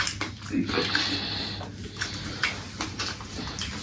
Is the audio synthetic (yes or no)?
no